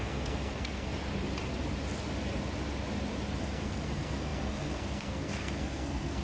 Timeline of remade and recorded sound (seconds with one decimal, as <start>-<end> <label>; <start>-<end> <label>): 0.0-0.9 remade; 0.9-3.4 recorded; 3.4-6.2 remade